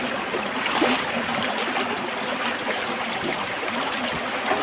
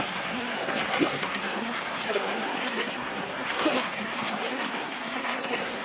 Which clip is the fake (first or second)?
second